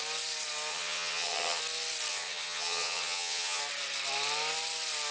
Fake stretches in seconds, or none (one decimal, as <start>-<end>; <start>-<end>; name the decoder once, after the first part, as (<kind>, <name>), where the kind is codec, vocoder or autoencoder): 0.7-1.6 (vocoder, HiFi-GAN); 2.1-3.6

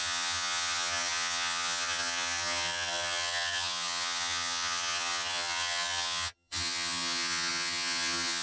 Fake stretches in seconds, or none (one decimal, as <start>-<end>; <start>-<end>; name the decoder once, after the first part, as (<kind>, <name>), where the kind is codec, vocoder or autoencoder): 0.0-8.4 (vocoder, HiFi-GAN)

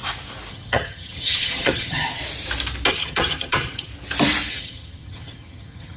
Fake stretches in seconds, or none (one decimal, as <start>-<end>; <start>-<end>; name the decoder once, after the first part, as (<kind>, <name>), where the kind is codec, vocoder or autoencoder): 0.5-2.2 (vocoder, HiFi-GAN); 2.9-3.9; 4.5-6.0

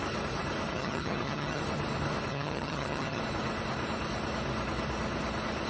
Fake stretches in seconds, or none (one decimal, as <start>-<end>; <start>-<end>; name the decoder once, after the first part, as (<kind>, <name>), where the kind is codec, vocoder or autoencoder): 0.7-1.6 (vocoder, HiFi-GAN); 2.3-3.2

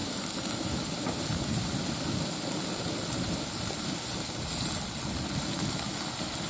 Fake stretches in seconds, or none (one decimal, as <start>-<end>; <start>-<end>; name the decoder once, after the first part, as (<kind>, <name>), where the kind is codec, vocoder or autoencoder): none

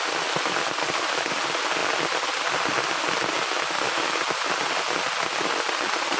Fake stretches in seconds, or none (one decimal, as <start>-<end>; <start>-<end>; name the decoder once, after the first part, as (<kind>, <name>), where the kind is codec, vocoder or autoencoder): none